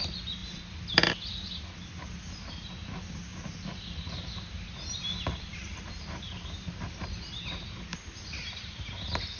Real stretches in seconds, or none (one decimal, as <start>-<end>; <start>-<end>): 0.0-5.6; 7.1-9.4